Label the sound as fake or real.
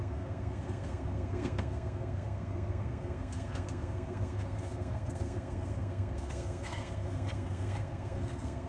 fake